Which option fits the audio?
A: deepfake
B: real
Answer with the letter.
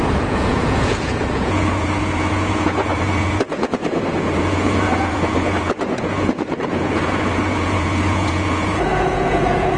A